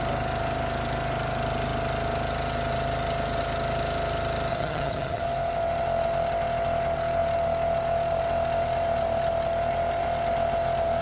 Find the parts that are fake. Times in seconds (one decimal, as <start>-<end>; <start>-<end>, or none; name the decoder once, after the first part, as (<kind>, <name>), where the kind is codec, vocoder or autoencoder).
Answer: 4.5-5.2 (vocoder, HiFi-GAN)